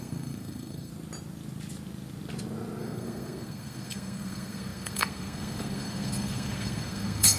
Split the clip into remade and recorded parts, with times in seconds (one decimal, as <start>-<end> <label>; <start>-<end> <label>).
0.0-0.9 remade; 0.9-2.8 recorded; 2.8-7.4 remade